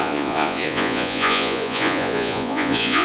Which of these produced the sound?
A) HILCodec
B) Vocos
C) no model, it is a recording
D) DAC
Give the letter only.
B